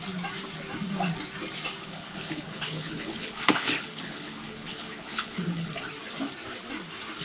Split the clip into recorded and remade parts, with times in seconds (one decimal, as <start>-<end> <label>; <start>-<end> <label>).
0.0-1.8 recorded; 1.8-5.9 remade; 5.9-7.2 recorded